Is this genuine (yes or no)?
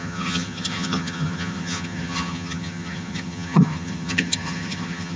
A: no